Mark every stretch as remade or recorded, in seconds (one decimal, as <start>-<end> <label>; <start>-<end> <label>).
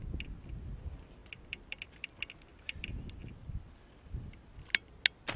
0.0-1.2 recorded; 1.2-2.0 remade; 2.0-2.5 recorded; 2.5-3.0 remade; 3.0-5.4 recorded